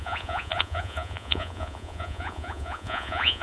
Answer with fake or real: fake